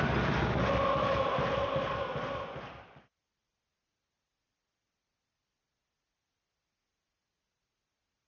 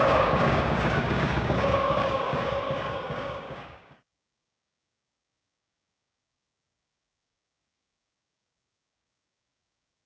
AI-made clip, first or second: second